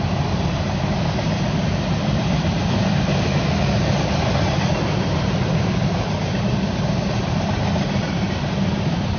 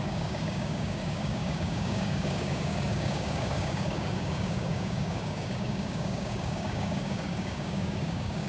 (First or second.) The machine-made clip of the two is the second